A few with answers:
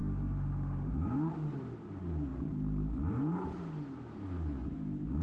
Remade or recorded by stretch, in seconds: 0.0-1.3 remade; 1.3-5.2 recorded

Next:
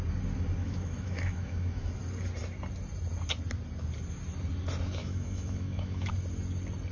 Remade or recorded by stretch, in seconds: 0.0-0.6 recorded; 0.6-1.9 remade; 1.9-5.0 recorded; 5.0-6.1 remade; 6.1-6.9 recorded

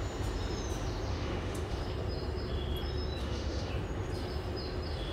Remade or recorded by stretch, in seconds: 0.0-1.1 recorded; 1.1-1.8 remade; 1.8-3.2 recorded; 3.2-3.7 remade; 3.7-5.1 recorded

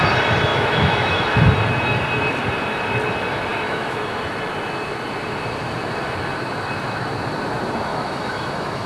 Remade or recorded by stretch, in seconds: 0.0-0.5 recorded; 0.5-1.4 remade; 1.4-3.5 recorded; 3.5-4.2 remade; 4.2-7.9 recorded; 7.9-8.9 remade

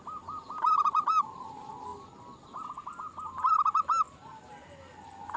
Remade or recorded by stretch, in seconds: 0.0-5.4 recorded

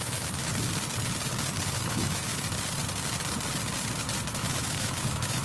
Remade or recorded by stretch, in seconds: 0.0-0.5 remade; 0.5-1.9 recorded; 1.9-2.3 remade; 2.3-4.3 recorded; 4.3-5.4 remade

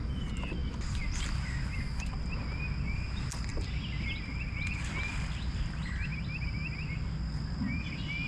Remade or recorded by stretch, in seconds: 0.0-8.3 recorded

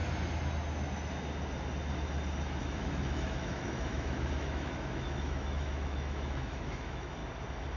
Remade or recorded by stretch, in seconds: 0.0-2.6 recorded; 2.6-7.2 remade; 7.2-7.8 recorded